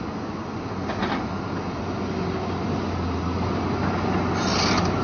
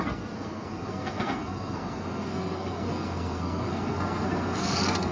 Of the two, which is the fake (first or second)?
second